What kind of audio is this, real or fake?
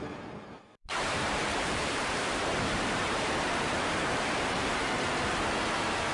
fake